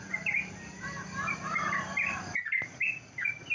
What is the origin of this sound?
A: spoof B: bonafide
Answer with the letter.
B